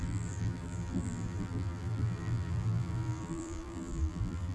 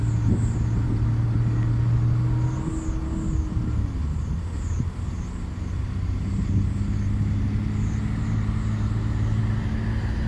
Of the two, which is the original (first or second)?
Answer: second